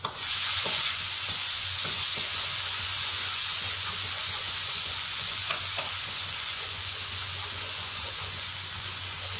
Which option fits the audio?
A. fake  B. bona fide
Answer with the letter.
A